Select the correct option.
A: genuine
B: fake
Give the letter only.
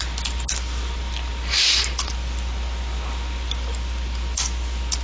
A